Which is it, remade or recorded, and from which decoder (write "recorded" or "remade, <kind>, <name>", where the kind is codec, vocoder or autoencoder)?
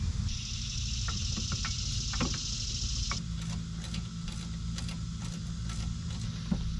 recorded